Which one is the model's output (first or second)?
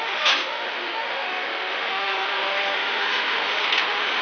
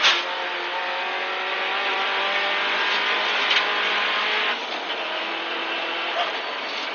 first